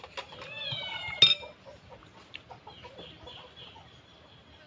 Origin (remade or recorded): recorded